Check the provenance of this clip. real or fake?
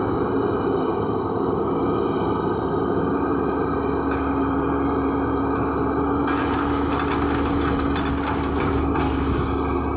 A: real